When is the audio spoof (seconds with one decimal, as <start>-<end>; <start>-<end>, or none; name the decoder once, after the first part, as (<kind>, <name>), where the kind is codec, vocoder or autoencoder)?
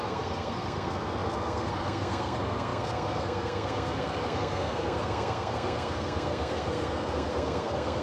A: 0.0-8.0 (codec, SNAC)